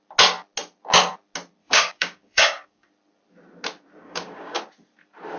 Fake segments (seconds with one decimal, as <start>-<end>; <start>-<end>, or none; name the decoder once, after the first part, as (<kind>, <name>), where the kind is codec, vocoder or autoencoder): 1.6-2.9 (codec, DAC); 4.0-4.6